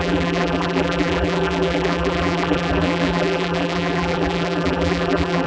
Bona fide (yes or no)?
no